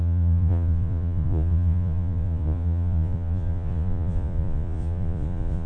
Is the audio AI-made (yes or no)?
yes